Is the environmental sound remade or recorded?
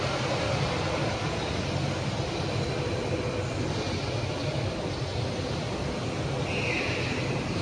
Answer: recorded